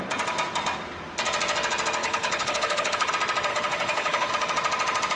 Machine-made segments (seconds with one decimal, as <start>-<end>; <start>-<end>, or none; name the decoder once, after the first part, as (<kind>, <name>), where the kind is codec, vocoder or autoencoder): 2.0-3.1 (codec, HILCodec); 3.5-4.3